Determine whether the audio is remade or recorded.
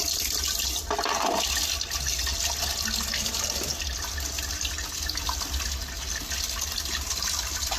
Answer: recorded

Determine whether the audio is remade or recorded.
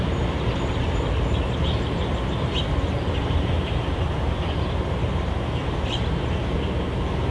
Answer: remade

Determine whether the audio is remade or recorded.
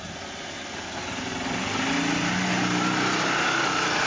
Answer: recorded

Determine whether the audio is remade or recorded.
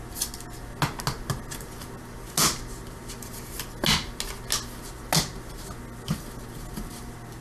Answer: recorded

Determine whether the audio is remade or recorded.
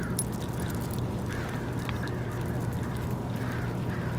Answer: recorded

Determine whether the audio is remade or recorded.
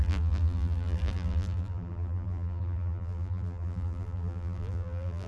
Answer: remade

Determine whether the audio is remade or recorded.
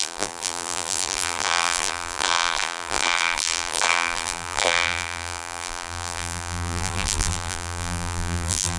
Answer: remade